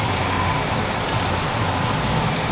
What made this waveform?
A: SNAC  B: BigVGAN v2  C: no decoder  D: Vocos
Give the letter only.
C